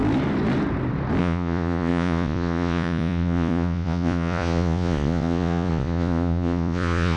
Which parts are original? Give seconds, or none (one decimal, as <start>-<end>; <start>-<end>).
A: 0.0-1.2